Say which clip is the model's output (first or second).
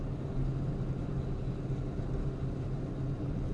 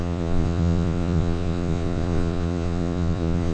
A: second